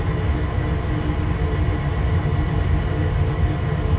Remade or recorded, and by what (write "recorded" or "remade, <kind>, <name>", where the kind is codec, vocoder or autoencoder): recorded